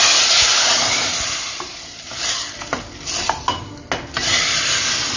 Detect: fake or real real